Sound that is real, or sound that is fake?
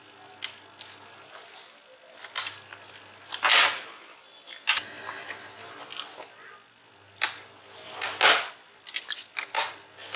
real